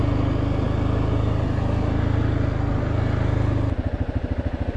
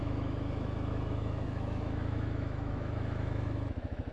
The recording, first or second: first